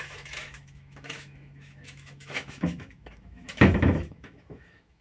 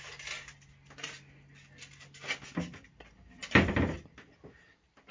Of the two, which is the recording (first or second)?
second